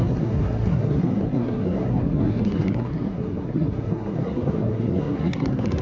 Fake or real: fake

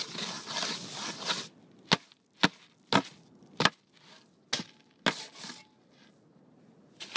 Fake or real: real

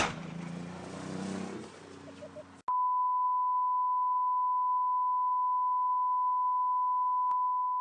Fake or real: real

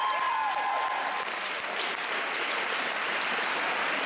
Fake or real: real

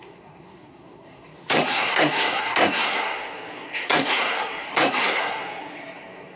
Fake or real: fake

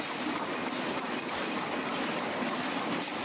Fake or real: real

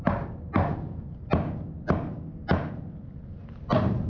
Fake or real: real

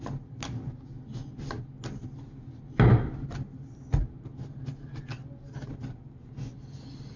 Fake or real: real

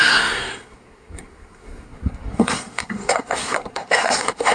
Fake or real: fake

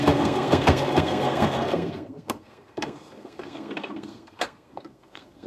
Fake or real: fake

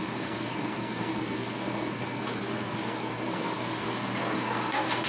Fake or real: fake